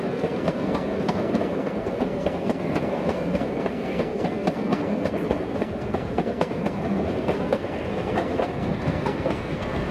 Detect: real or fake fake